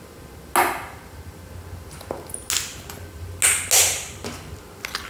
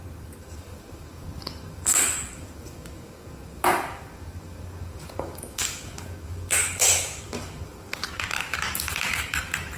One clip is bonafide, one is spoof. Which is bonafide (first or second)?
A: first